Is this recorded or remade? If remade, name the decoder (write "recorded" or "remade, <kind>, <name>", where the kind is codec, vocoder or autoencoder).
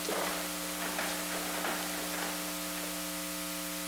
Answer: recorded